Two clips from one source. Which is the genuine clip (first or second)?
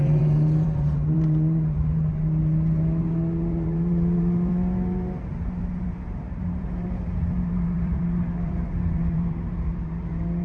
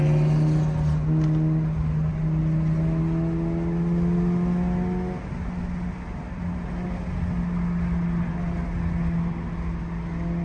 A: second